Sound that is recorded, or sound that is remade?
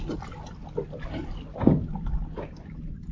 recorded